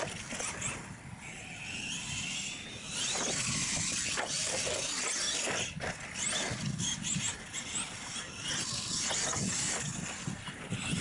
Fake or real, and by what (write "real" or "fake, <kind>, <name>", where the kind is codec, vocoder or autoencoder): real